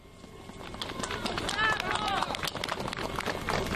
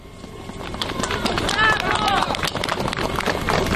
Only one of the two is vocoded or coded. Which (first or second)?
second